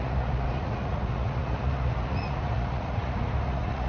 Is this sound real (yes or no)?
no